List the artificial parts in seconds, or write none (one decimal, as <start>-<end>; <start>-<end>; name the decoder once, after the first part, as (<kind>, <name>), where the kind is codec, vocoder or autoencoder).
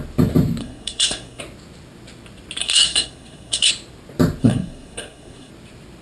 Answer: 0.6-1.4 (codec, SNAC); 2.6-3.7; 4.4-5.5